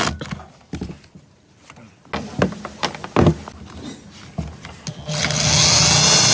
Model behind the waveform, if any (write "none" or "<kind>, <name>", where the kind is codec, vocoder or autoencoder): none